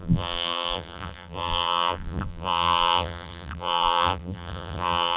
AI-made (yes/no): yes